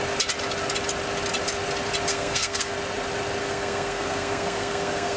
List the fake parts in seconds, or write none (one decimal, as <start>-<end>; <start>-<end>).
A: 2.1-2.7; 3.4-5.2